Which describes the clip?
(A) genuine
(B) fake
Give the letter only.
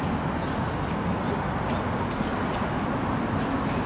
A